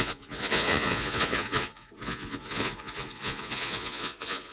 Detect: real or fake fake